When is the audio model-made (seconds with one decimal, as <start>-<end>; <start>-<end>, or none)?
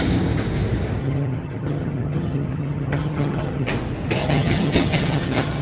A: 1.0-3.7; 4.2-5.6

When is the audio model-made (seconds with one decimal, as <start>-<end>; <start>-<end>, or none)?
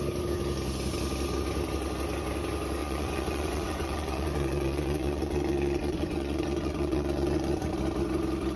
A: 2.8-7.7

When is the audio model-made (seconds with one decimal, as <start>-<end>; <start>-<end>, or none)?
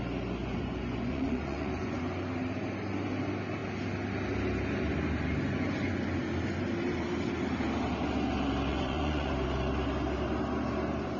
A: 0.4-2.0; 8.7-9.3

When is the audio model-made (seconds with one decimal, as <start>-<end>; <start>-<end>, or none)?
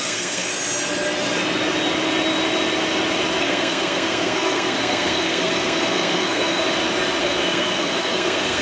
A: 0.0-0.5; 3.4-6.6; 7.2-8.6